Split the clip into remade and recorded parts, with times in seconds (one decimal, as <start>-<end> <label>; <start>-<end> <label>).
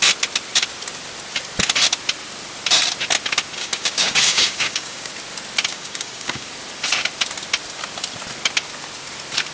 0.0-3.6 recorded; 3.6-5.1 remade; 5.1-5.7 recorded; 5.7-6.5 remade; 6.5-9.5 recorded